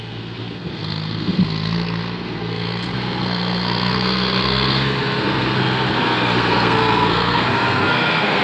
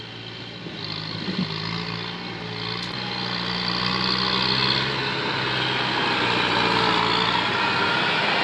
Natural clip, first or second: second